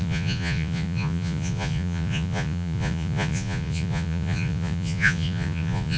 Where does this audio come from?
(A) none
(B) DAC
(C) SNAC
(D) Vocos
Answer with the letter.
D